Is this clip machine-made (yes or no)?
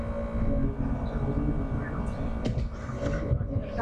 no